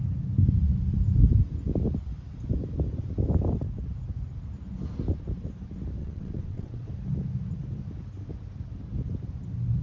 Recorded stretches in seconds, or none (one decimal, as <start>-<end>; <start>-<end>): 0.0-6.0; 6.9-9.8